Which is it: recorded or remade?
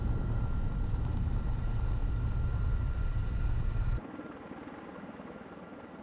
recorded